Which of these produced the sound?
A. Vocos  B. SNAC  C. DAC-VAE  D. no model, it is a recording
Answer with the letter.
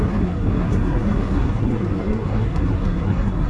B